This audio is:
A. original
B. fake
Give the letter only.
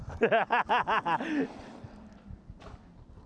A